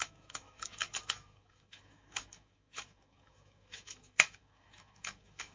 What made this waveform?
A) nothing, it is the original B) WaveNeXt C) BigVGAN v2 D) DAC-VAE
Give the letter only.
D